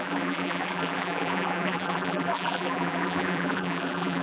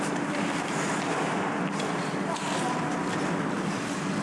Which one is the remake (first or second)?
first